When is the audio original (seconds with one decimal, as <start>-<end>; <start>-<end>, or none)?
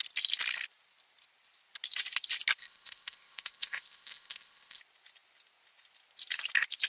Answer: 0.0-2.6; 4.8-6.9